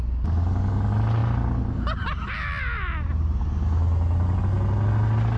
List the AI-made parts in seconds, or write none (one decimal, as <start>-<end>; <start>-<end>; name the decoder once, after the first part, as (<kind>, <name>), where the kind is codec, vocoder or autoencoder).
none